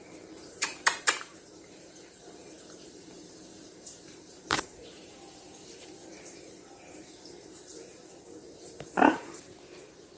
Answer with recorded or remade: remade